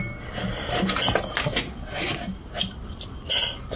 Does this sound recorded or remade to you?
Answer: recorded